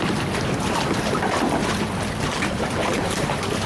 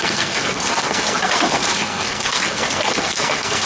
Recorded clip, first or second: first